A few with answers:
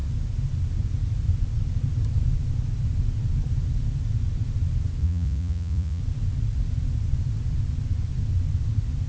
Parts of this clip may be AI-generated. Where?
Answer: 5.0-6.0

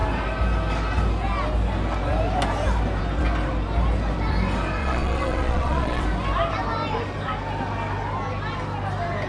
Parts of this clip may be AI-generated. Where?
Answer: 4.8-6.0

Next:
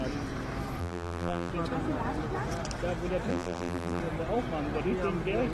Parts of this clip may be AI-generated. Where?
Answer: 0.8-1.5; 3.3-4.0

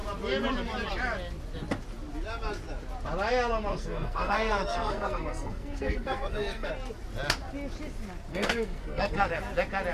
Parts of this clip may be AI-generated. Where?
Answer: 3.7-6.7; 8.3-9.4

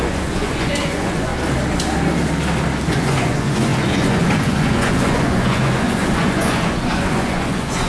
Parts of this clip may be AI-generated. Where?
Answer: 0.0-1.3; 2.9-7.9

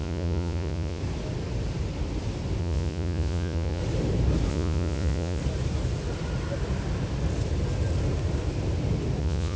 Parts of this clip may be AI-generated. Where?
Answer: 0.0-1.0; 2.6-3.8; 4.5-5.4; 9.2-9.6

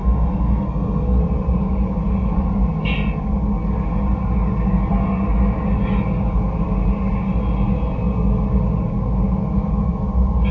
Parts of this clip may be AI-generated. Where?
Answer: 0.0-1.2